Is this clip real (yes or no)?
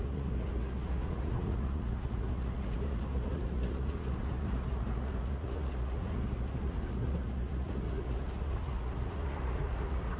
no